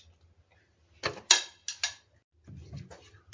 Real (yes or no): yes